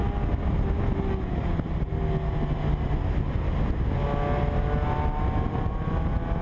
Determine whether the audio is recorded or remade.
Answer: recorded